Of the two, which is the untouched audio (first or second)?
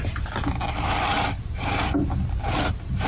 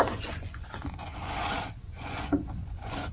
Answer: first